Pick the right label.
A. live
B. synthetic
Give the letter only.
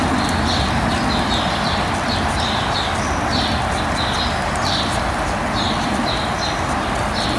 A